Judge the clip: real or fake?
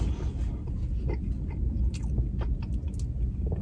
real